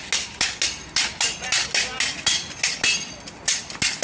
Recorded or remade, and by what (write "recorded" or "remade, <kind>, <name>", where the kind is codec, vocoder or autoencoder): recorded